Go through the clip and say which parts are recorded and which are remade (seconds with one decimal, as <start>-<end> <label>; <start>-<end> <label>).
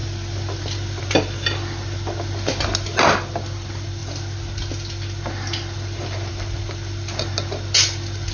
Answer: 0.0-8.3 recorded